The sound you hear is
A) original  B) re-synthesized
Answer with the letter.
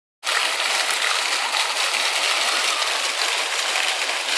A